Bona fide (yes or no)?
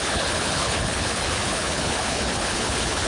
no